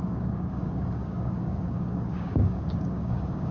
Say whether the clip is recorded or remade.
remade